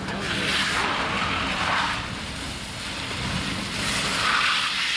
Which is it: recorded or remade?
recorded